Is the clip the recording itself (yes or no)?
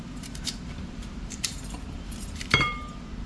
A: no